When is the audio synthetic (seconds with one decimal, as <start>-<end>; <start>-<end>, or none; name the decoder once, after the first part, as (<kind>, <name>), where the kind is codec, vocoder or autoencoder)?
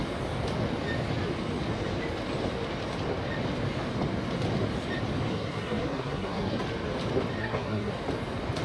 5.3-6.6 (codec, SNAC); 7.4-7.9